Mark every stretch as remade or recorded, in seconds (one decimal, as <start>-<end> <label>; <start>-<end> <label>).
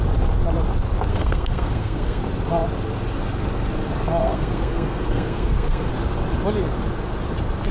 0.0-1.1 recorded; 1.1-2.2 remade; 2.2-4.2 recorded; 4.2-5.9 remade; 5.9-7.7 recorded